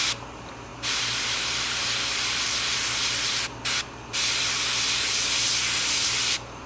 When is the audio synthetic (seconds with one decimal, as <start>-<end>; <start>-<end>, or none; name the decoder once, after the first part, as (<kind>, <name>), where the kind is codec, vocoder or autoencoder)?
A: none